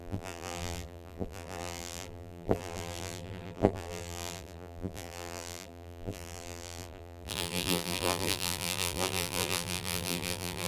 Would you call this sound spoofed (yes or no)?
yes